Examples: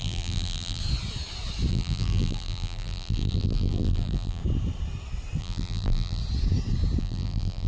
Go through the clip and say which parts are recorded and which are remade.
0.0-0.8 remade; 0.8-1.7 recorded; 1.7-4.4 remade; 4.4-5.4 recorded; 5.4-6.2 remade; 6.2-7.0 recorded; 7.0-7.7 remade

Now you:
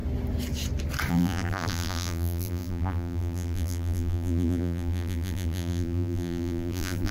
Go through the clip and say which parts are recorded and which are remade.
0.0-1.1 recorded; 1.1-7.1 remade

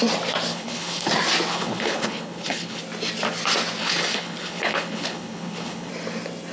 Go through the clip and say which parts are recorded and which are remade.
0.0-0.5 recorded; 0.5-1.1 remade; 1.1-1.5 recorded; 1.5-2.8 remade; 2.8-3.8 recorded; 3.8-5.9 remade; 5.9-6.5 recorded

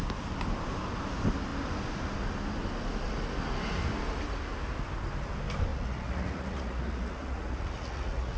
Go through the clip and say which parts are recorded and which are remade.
0.0-5.7 recorded; 5.7-8.4 remade

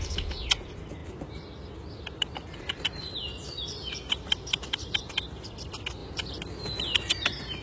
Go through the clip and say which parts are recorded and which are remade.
0.0-1.0 remade; 1.0-2.0 recorded; 2.0-6.0 remade; 6.0-7.1 recorded; 7.1-7.6 remade

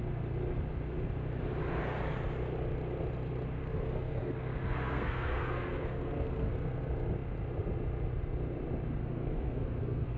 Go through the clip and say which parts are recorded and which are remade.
0.0-3.6 recorded; 3.6-6.5 remade; 6.5-9.0 recorded; 9.0-10.2 remade